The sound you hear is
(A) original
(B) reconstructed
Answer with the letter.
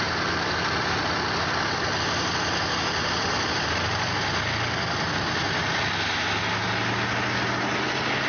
A